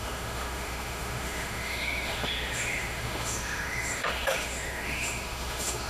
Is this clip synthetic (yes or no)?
yes